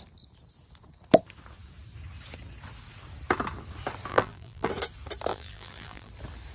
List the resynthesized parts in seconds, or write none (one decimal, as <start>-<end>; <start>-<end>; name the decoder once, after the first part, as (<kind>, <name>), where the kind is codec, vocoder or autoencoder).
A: 4.1-4.7 (vocoder, BigVGAN v2); 5.3-6.1